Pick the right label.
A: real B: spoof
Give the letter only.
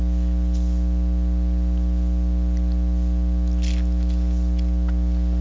A